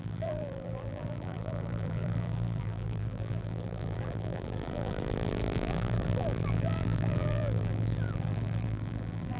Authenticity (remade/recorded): remade